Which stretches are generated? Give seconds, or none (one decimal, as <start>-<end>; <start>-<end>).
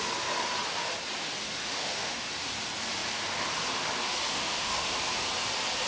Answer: 1.6-2.3; 4.3-4.9